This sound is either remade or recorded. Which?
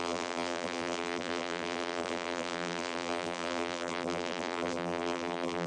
remade